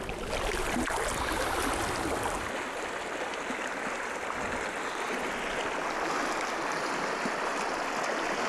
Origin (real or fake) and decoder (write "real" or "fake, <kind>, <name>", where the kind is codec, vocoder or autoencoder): real